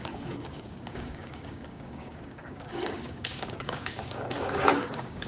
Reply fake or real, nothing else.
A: fake